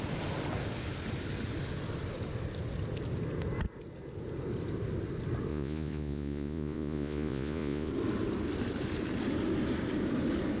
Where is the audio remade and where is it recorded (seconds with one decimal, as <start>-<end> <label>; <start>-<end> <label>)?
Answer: 0.0-5.5 recorded; 5.5-7.9 remade; 7.9-10.6 recorded